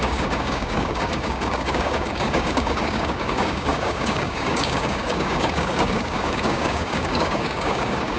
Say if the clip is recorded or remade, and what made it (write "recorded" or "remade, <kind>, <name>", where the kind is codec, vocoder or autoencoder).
remade, codec, DAC